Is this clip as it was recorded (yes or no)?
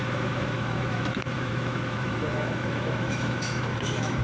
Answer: no